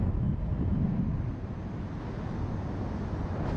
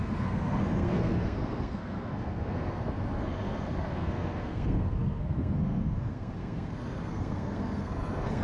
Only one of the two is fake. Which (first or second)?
second